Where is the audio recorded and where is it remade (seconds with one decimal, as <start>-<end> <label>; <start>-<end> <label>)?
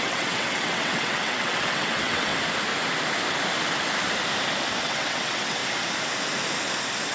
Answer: 0.0-2.3 remade; 2.3-4.8 recorded; 4.8-5.6 remade; 5.6-7.1 recorded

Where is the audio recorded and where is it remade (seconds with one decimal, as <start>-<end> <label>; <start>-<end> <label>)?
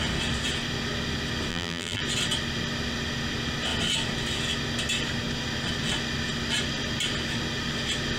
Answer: 0.0-1.5 recorded; 1.5-2.0 remade; 2.0-8.2 recorded